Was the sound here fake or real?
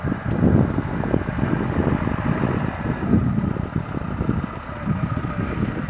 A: real